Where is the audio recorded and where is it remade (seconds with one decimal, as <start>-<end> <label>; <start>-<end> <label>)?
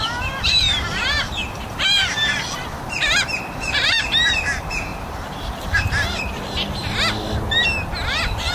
0.0-6.8 remade; 6.8-8.5 recorded